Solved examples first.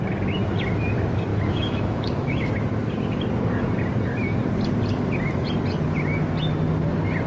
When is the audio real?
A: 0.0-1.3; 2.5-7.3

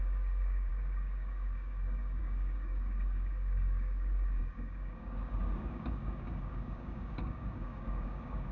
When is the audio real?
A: none

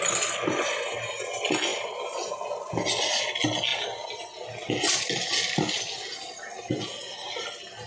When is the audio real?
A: 0.0-7.9